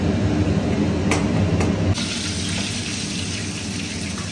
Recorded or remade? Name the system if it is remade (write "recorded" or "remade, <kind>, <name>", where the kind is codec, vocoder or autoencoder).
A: recorded